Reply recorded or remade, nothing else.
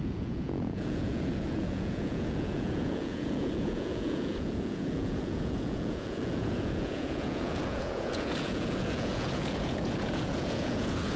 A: remade